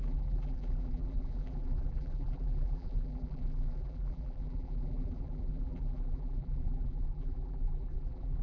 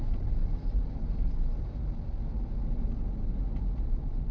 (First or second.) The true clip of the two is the second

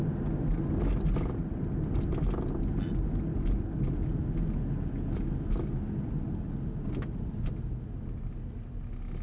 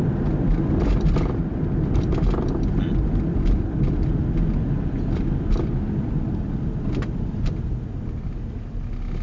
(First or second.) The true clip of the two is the first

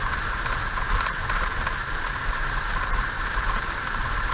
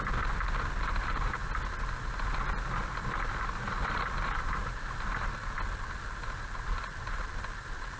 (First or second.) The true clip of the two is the second